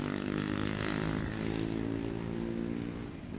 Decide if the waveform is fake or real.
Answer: real